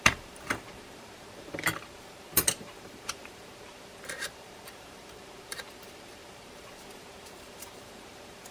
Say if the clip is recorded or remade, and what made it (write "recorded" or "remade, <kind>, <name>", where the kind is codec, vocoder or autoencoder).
remade, vocoder, BigVGAN v2